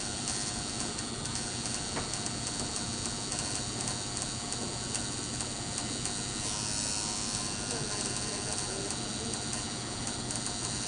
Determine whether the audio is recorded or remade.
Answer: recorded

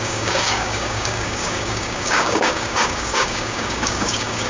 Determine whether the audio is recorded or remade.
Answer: remade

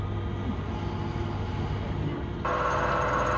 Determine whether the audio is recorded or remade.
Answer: recorded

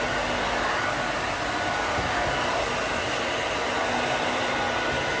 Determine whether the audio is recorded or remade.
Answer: recorded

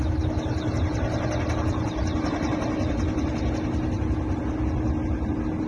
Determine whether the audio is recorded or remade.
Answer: recorded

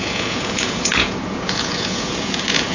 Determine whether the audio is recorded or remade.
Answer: remade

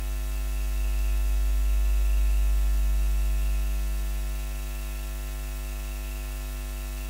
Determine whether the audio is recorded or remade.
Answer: recorded